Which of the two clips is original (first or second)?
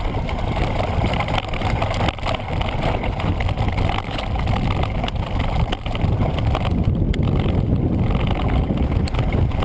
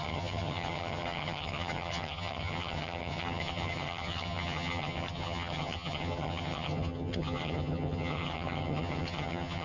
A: first